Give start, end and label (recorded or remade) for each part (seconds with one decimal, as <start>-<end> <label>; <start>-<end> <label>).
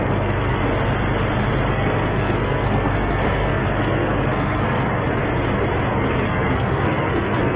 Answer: 0.0-0.6 remade; 0.6-1.7 recorded; 1.7-5.2 remade; 5.2-5.9 recorded; 5.9-7.6 remade